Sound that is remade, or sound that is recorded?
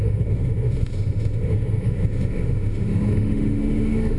remade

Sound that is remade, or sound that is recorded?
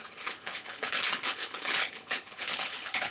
remade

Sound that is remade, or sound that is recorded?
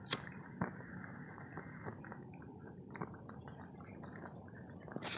remade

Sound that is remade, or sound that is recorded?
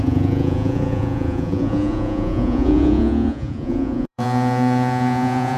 remade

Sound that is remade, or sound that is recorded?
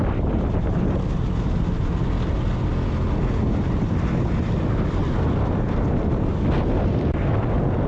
recorded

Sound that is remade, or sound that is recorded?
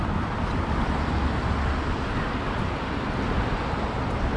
recorded